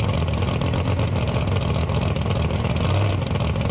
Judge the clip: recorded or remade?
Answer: recorded